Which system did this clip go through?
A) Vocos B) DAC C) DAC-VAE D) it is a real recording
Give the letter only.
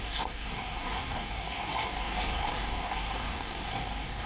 B